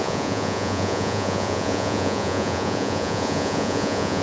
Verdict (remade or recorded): remade